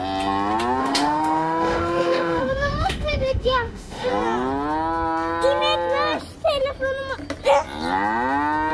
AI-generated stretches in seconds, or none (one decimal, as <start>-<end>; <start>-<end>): 0.8-4.1